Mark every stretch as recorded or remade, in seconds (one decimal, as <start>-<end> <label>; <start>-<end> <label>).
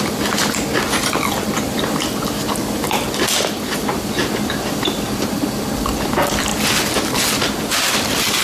0.0-8.4 recorded